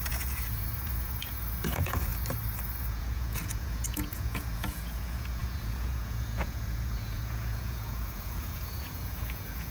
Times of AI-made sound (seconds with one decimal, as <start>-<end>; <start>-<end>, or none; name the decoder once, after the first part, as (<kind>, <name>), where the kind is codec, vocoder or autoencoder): 0.0-2.1 (vocoder, Vocos); 2.8-9.7